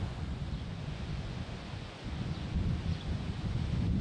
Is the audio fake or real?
fake